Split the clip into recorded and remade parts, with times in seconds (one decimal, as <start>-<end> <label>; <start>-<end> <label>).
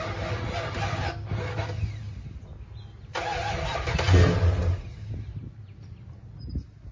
0.0-6.9 recorded